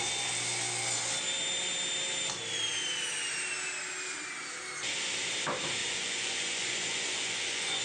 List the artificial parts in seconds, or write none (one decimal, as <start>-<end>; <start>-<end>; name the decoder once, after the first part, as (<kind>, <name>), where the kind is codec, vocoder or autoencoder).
5.8-7.8 (vocoder, Vocos)